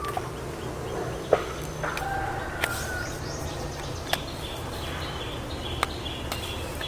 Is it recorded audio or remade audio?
recorded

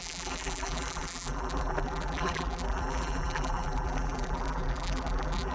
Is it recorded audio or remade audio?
remade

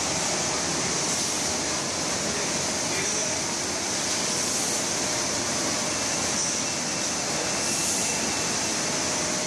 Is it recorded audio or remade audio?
recorded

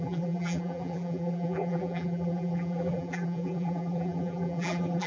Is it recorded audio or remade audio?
remade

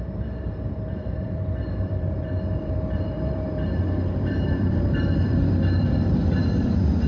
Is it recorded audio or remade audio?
remade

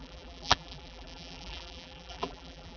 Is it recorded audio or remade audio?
remade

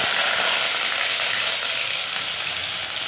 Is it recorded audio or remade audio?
recorded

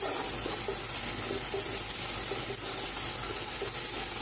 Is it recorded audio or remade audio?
recorded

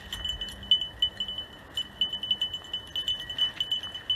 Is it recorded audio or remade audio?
recorded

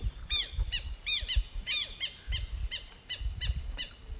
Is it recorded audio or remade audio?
remade